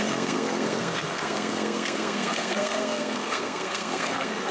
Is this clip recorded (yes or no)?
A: no